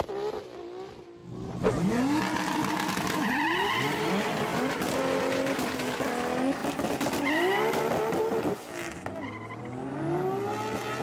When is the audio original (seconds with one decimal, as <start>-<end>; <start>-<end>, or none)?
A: 0.0-11.0